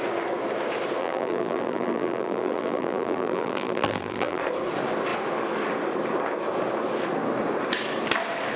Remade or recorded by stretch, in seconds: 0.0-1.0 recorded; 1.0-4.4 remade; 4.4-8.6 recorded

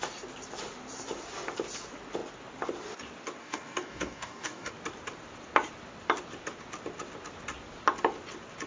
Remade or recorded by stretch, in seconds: 0.0-3.4 recorded; 3.4-4.7 remade; 4.7-8.7 recorded

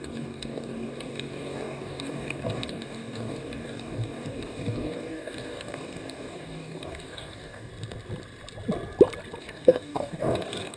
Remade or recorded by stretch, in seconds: 0.0-7.7 remade; 7.7-9.4 recorded; 9.4-10.8 remade